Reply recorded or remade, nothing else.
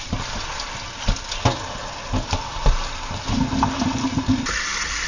recorded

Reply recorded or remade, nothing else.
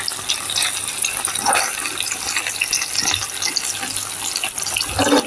recorded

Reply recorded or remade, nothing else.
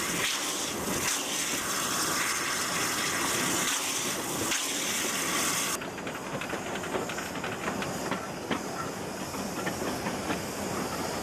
recorded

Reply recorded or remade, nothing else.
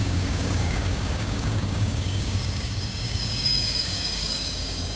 remade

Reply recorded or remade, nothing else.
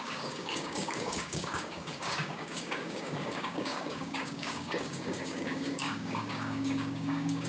remade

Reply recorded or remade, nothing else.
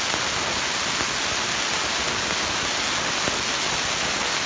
recorded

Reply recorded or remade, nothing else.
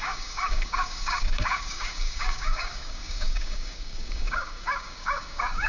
remade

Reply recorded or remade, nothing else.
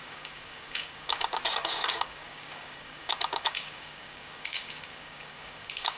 remade